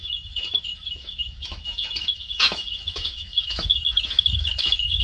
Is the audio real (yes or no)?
no